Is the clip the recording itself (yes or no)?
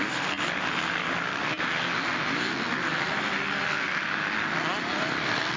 yes